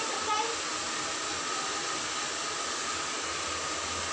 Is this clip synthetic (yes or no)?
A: no